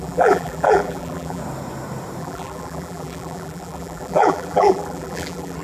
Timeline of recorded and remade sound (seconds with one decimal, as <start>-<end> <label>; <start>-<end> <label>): 0.0-1.4 remade; 1.4-2.2 recorded; 2.2-5.6 remade